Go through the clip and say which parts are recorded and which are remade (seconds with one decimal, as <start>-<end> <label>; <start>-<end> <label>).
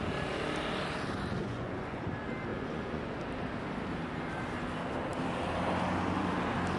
0.0-1.4 recorded; 1.4-2.1 remade; 2.1-2.5 recorded; 2.5-3.2 remade; 3.2-6.8 recorded